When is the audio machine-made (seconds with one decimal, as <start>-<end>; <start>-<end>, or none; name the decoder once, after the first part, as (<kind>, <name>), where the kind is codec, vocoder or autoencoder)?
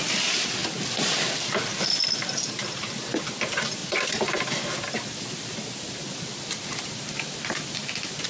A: 3.8-4.5 (vocoder, BigVGAN v2); 6.7-7.8